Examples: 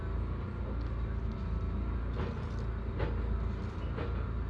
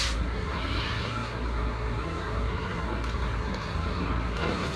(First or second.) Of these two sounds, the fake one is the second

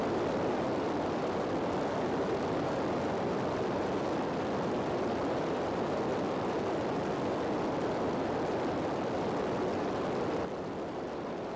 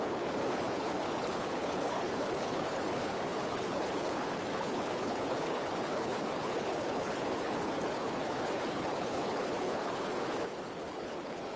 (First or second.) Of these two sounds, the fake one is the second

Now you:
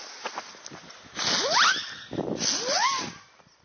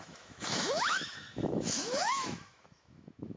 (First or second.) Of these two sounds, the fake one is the second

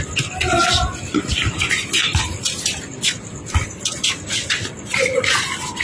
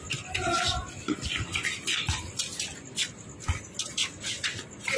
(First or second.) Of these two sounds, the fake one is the first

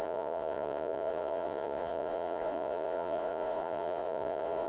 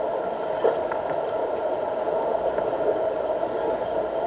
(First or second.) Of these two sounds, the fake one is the first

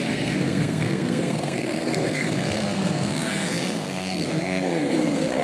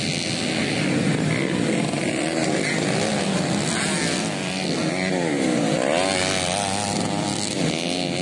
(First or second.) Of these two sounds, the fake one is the first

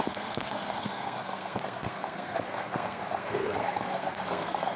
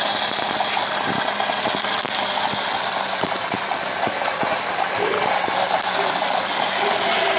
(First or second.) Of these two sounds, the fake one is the first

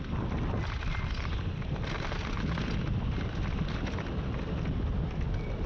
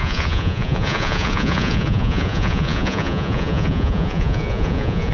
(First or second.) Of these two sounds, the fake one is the second